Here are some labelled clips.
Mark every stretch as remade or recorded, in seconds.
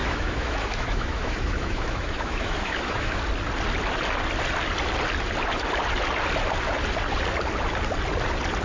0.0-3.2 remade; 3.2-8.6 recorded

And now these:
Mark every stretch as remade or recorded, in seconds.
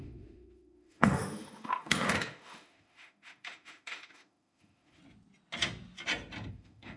0.0-5.0 remade; 5.0-6.5 recorded; 6.5-7.0 remade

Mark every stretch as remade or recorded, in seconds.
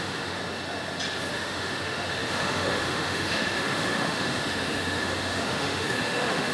0.0-0.4 remade; 0.4-1.3 recorded; 1.3-6.5 remade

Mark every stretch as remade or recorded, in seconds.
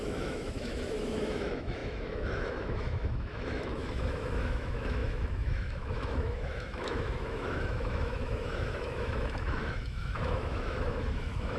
0.0-11.6 remade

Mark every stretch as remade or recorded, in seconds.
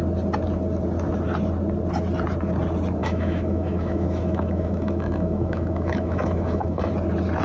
0.0-3.0 recorded; 3.0-6.9 remade; 6.9-7.4 recorded